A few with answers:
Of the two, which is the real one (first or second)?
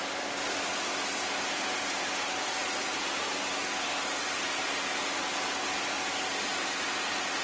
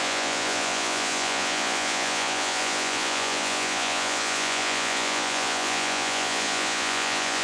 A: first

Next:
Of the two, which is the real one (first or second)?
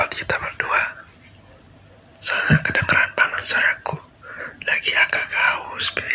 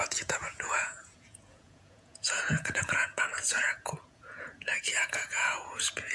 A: first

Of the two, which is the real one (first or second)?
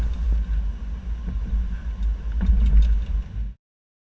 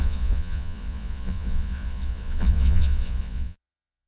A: first